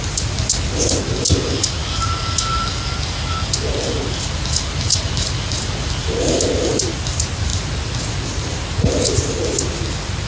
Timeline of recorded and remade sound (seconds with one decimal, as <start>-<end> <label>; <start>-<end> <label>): 0.0-10.3 recorded